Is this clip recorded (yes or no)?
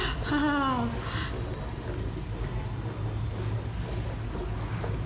yes